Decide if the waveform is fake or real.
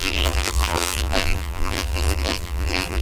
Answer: fake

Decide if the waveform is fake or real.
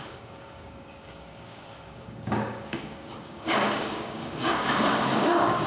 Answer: fake